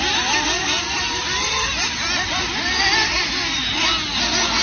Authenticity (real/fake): real